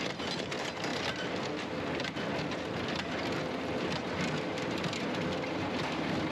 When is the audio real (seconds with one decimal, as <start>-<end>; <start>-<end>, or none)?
0.0-6.3